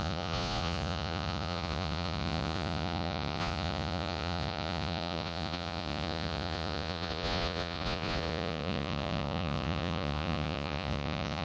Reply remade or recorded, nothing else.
remade